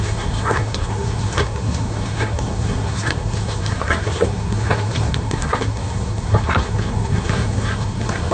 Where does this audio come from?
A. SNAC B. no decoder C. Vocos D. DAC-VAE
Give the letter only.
A